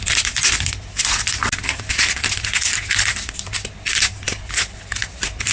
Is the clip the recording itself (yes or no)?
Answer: yes